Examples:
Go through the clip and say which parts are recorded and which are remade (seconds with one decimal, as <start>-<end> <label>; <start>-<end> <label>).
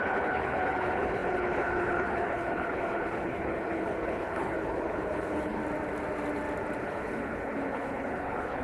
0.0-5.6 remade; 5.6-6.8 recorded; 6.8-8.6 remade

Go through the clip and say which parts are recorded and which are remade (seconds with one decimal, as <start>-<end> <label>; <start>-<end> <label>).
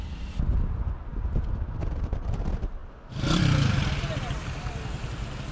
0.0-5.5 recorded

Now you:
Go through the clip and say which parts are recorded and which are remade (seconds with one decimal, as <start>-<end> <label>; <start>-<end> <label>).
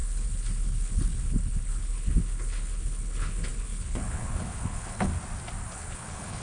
0.0-5.1 remade; 5.1-5.7 recorded; 5.7-6.4 remade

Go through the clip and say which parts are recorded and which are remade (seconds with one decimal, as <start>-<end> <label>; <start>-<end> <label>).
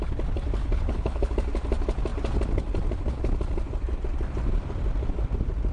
0.0-0.6 recorded; 0.6-1.3 remade; 1.3-5.7 recorded